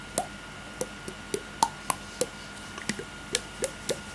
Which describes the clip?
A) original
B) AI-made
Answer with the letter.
A